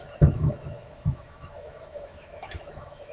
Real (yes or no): no